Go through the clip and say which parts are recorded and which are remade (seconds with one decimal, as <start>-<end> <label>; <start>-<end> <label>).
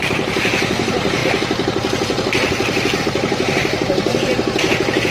0.0-1.2 remade; 1.2-3.0 recorded; 3.0-5.1 remade